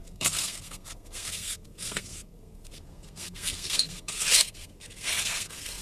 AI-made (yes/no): yes